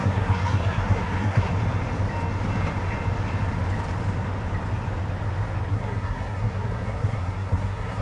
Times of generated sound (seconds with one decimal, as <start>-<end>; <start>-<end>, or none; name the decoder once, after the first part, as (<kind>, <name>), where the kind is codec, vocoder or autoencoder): 0.0-1.5 (codec, SNAC); 5.7-8.0